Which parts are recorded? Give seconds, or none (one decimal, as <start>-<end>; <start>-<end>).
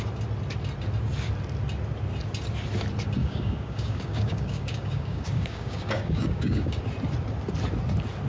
0.0-3.2; 6.8-8.3